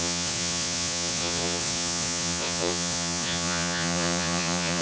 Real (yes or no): no